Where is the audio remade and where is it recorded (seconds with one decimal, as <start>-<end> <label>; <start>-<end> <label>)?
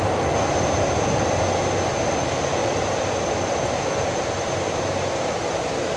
0.0-2.6 recorded; 2.6-3.8 remade; 3.8-6.0 recorded